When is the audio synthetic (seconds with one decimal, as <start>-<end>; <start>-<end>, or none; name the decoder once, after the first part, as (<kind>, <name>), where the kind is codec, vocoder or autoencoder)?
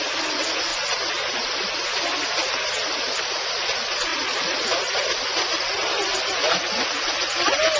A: 4.1-4.7 (vocoder, BigVGAN v2); 5.3-6.3